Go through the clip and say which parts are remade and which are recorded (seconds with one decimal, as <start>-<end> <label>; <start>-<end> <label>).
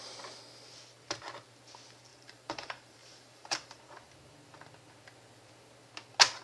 0.0-2.1 recorded; 2.1-3.8 remade; 3.8-6.4 recorded